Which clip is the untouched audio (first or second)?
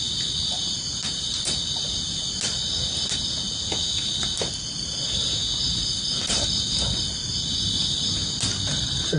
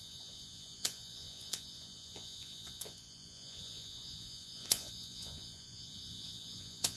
first